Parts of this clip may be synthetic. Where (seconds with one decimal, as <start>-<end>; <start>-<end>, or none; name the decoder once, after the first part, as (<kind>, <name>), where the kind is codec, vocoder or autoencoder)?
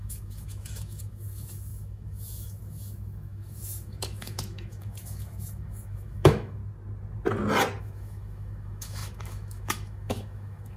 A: 0.0-6.6 (autoencoder, DAC-VAE); 7.8-10.8